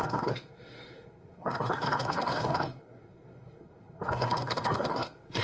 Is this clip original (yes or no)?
no